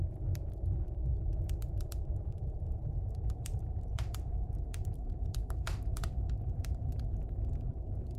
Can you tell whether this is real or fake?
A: fake